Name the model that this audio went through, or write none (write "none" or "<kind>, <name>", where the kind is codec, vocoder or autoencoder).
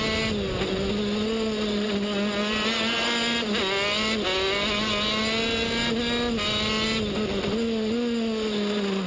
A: none